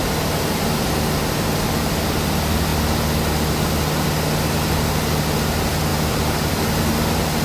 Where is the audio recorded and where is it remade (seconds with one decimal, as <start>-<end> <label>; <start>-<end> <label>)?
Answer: 0.0-2.0 remade; 2.0-5.9 recorded; 5.9-6.5 remade; 6.5-7.4 recorded